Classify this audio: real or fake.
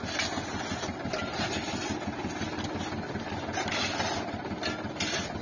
real